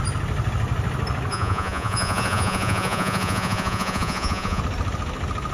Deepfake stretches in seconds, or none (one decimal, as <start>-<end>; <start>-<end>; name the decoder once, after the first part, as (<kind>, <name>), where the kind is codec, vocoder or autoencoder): 1.3-4.6 (vocoder, Vocos)